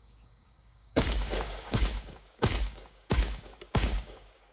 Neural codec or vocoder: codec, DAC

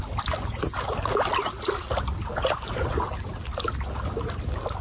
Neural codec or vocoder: none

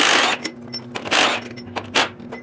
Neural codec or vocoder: none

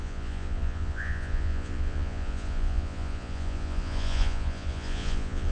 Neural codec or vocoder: vocoder, Vocos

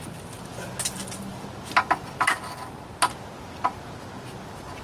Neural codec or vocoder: none